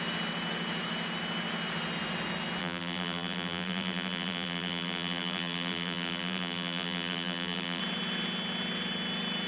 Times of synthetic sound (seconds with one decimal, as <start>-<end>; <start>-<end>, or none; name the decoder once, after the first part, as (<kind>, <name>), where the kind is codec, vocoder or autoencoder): 2.6-7.8 (vocoder, BigVGAN v2)